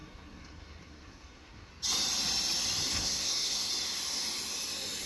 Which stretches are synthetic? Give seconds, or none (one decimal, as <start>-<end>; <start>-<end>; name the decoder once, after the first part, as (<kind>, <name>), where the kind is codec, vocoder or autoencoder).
0.0-1.7 (codec, SNAC); 2.9-3.7